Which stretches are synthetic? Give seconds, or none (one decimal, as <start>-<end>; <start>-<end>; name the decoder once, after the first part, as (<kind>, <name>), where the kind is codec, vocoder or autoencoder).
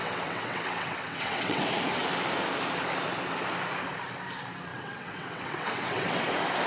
0.0-1.6 (vocoder, WaveNeXt); 4.7-6.3